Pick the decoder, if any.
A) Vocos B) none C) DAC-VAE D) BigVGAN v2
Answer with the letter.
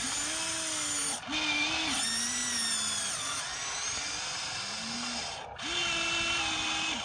B